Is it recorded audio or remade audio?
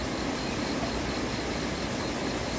recorded